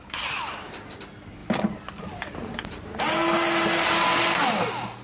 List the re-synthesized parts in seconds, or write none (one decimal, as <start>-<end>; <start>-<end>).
1.4-3.0